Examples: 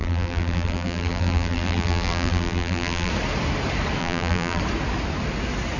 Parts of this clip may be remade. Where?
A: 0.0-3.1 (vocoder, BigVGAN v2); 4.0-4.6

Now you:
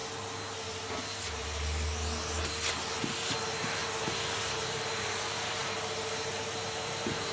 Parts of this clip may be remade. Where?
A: 2.7-3.8 (vocoder, BigVGAN v2); 4.5-5.6; 6.3-7.3

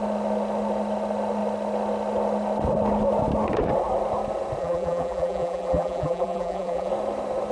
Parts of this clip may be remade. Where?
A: 4.6-6.9 (vocoder, BigVGAN v2)

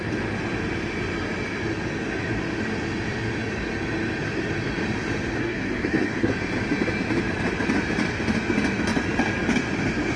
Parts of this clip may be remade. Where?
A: 5.4-6.3 (codec, SNAC)

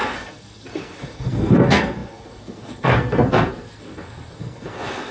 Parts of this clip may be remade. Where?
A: 0.0-5.1 (codec, SNAC)